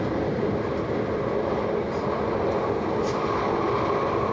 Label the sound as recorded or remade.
recorded